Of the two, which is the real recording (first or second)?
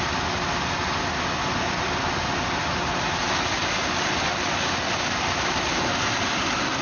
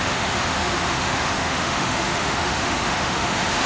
first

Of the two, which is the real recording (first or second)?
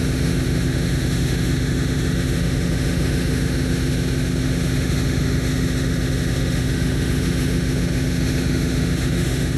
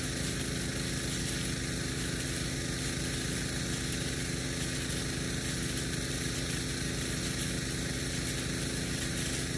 second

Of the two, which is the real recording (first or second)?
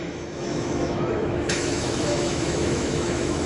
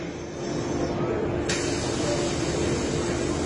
second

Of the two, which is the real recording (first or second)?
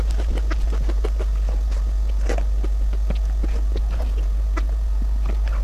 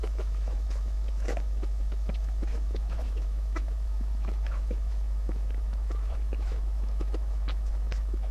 first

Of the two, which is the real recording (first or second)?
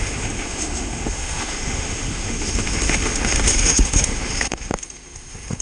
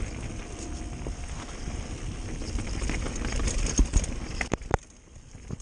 second